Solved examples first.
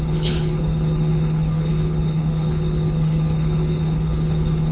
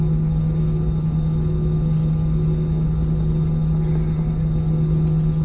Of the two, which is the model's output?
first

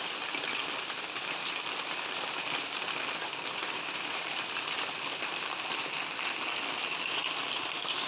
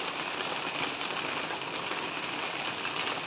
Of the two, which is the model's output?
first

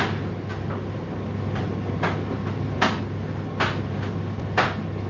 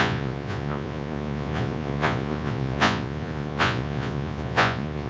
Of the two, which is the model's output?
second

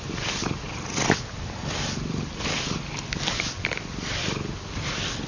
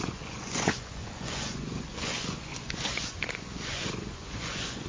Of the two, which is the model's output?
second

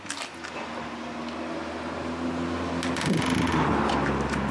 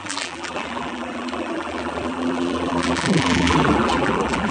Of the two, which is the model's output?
second